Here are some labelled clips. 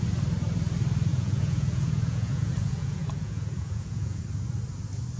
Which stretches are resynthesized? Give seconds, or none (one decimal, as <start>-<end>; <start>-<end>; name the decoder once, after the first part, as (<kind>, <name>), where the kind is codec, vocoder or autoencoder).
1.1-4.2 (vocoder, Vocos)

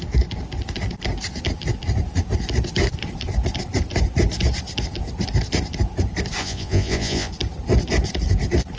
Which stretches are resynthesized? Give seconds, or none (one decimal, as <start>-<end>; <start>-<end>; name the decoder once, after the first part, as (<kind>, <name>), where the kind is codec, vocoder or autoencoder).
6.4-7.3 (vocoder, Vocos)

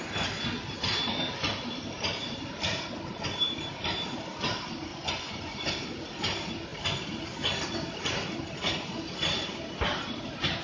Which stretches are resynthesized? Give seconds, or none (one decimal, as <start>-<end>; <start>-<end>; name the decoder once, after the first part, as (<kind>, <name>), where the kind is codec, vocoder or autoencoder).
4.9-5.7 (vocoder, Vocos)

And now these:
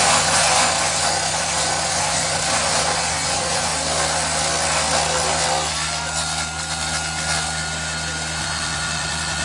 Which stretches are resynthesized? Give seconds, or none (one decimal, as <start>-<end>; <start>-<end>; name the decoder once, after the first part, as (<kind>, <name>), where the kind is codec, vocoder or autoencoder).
0.0-3.7 (vocoder, Vocos); 8.4-9.4